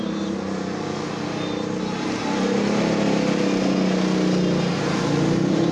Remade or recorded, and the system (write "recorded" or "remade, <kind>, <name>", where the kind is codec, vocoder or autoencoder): recorded